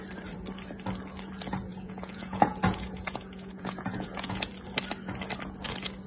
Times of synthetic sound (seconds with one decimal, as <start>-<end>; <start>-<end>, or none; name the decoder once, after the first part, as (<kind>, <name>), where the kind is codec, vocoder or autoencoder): 1.7-4.5 (vocoder, Vocos)